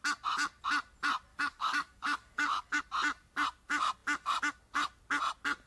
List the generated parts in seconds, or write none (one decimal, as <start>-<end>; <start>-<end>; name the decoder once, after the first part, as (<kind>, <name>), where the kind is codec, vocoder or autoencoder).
1.3-2.8 (codec, DAC)

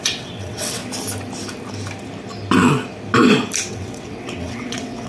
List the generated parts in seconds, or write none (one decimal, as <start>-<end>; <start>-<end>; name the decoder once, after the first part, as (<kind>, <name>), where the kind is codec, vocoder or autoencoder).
0.0-0.8 (vocoder, WaveNeXt); 3.7-5.1

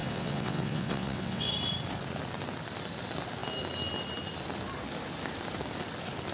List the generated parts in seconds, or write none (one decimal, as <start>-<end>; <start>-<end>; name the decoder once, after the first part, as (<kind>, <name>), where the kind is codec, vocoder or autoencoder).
0.0-1.5 (vocoder, WaveNeXt)

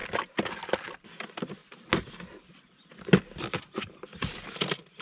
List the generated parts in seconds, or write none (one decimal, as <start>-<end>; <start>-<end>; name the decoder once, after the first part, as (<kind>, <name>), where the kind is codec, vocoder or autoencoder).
none

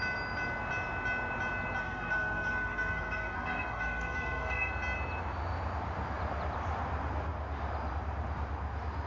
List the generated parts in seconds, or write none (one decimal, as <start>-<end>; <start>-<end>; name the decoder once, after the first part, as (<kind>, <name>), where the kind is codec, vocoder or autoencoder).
1.8-4.7 (codec, SNAC)

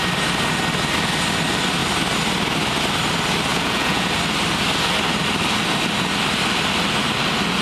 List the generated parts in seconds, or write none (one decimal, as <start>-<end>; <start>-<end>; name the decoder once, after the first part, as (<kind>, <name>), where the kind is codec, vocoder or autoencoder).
3.5-4.1 (vocoder, Vocos)